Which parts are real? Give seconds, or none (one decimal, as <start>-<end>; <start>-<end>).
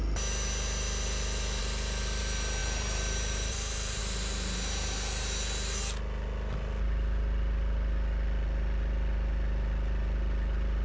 0.0-2.6; 4.0-10.8